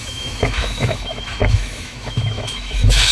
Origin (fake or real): fake